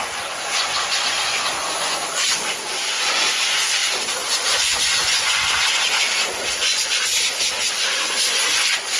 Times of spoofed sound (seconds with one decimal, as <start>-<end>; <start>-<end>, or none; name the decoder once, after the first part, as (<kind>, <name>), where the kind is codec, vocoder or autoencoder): 0.0-7.1 (vocoder, Vocos); 7.7-9.0